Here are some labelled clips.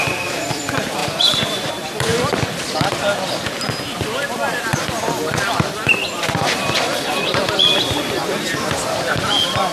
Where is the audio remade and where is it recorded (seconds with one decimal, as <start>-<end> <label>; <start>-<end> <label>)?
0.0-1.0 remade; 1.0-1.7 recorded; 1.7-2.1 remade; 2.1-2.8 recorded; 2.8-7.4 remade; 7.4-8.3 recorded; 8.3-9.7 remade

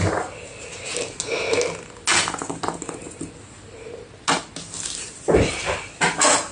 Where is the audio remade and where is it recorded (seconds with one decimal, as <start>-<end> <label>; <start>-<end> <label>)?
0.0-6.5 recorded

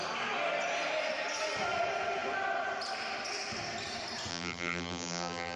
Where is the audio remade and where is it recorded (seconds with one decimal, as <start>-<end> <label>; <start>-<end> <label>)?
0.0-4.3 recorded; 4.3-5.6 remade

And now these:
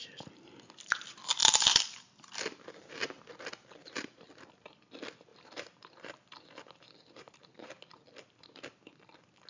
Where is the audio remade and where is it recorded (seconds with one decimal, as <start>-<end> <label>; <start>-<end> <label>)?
0.0-1.4 recorded; 1.4-4.3 remade; 4.3-5.3 recorded; 5.3-7.7 remade; 7.7-9.5 recorded